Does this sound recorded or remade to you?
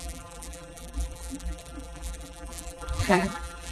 remade